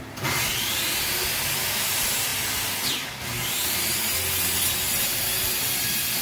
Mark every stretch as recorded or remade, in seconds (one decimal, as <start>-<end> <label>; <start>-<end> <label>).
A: 0.0-6.2 recorded